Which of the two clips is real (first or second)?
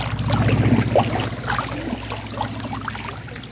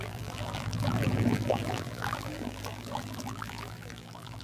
first